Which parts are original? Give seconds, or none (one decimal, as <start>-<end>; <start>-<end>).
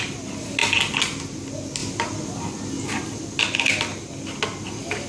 0.0-5.1